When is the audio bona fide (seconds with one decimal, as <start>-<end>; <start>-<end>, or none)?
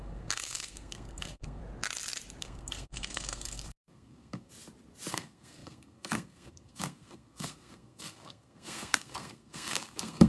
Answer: 1.6-2.4; 4.5-5.1